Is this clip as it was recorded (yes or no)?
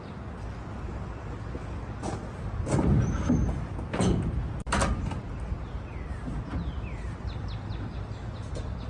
yes